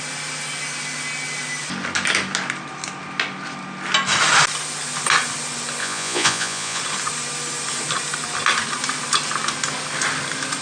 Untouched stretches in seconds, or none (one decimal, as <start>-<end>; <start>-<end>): 0.0-5.8; 6.8-10.6